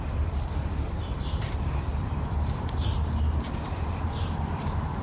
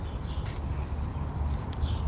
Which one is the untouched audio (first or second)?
second